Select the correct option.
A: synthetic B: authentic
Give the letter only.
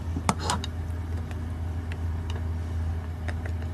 B